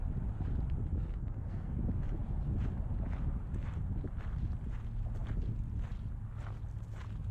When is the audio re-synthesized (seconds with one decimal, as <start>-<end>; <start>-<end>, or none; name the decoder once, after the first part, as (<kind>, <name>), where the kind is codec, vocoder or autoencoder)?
0.9-1.8 (codec, SNAC)